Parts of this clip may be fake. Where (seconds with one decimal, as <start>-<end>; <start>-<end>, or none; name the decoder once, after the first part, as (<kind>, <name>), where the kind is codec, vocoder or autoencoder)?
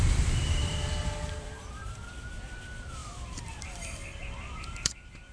0.0-3.0 (vocoder, BigVGAN v2); 3.6-4.0; 4.6-5.3